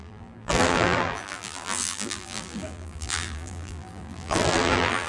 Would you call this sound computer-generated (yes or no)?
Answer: yes